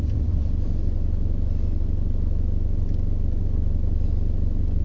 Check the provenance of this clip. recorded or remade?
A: recorded